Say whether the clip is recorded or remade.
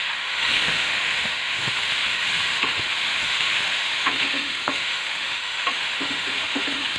remade